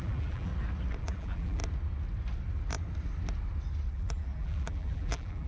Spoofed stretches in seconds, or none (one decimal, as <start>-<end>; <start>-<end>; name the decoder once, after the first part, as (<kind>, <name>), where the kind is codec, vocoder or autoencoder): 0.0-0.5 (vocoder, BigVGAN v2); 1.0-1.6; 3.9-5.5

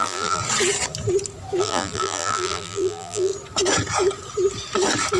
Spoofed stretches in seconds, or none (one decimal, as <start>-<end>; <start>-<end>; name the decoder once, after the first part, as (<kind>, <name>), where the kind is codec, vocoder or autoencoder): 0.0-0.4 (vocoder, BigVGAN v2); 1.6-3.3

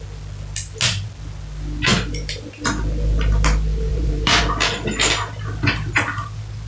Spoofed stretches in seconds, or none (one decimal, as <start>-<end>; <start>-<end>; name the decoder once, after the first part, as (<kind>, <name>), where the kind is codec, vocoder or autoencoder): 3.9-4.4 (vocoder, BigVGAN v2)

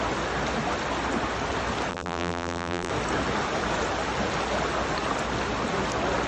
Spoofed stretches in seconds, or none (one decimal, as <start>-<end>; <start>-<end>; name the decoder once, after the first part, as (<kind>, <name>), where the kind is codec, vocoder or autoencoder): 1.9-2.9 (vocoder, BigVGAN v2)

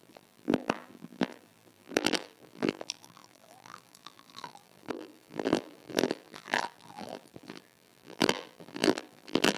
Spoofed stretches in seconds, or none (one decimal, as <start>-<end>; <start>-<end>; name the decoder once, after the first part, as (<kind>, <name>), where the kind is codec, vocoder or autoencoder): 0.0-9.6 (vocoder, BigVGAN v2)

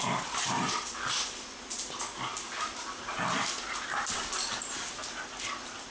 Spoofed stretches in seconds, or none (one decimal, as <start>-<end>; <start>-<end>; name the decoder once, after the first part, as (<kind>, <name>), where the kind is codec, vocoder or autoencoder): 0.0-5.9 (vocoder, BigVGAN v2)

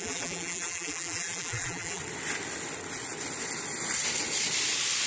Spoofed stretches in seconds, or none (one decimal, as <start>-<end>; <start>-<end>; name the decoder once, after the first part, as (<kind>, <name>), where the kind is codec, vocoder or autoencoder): 0.0-2.0 (vocoder, BigVGAN v2)

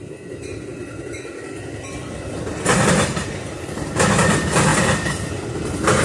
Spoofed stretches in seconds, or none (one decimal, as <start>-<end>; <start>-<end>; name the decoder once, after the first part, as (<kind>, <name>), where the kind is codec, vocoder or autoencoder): 4.7-5.3 (vocoder, BigVGAN v2)